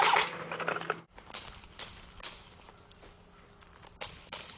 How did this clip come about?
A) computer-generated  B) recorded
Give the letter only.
B